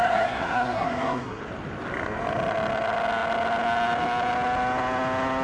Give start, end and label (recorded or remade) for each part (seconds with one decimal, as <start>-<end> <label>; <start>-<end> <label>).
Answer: 0.0-1.4 remade; 1.4-5.4 recorded

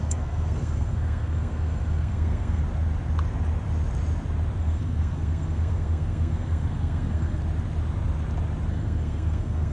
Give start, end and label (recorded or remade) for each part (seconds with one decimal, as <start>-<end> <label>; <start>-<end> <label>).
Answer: 0.0-2.6 remade; 2.6-4.6 recorded; 4.6-7.4 remade; 7.4-8.7 recorded; 8.7-9.7 remade

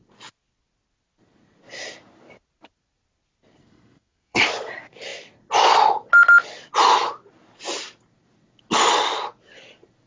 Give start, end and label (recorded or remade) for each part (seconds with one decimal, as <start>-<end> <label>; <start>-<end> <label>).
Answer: 0.0-3.6 recorded; 3.6-4.4 remade; 4.4-10.1 recorded

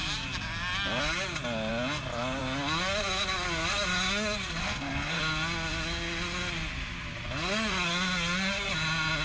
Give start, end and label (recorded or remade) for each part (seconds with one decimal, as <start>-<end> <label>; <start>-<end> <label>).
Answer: 0.0-4.6 recorded; 4.6-5.2 remade; 5.2-9.2 recorded

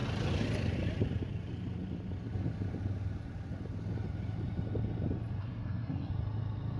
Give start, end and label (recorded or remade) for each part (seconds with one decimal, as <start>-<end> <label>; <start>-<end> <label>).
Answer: 0.0-5.4 recorded; 5.4-6.1 remade; 6.1-6.8 recorded

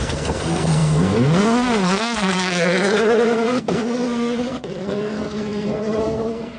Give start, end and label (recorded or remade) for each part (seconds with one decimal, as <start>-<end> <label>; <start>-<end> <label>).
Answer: 0.0-6.6 remade

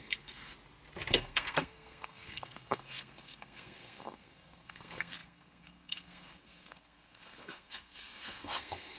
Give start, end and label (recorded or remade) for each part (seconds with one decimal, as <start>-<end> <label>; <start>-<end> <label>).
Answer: 0.0-0.5 remade; 0.5-1.1 recorded; 1.1-9.0 remade